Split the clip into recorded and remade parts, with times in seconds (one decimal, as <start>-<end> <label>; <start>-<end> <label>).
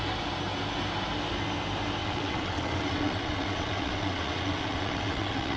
0.0-2.0 recorded; 2.0-5.6 remade